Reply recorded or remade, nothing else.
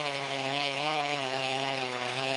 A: remade